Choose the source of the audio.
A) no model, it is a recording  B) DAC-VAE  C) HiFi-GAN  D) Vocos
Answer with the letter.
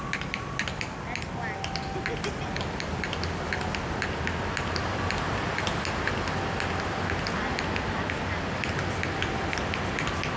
A